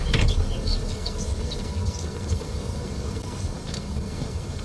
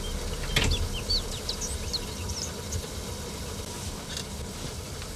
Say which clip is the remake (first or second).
first